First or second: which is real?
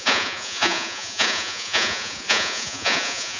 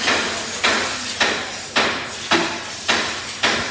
second